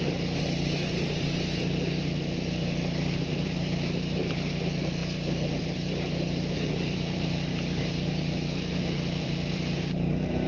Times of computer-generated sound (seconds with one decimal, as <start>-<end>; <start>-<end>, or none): 0.0-10.5